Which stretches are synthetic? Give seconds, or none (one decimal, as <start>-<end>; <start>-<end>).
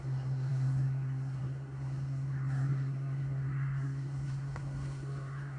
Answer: 0.0-5.6